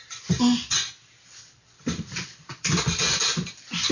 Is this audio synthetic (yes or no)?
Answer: no